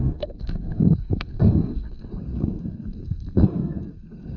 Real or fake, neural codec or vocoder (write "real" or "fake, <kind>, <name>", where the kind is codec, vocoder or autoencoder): fake, codec, SNAC